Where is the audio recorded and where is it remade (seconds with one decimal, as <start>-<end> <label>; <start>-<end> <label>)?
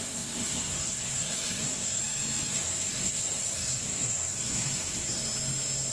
0.0-2.0 remade; 2.0-2.5 recorded; 2.5-5.2 remade; 5.2-5.9 recorded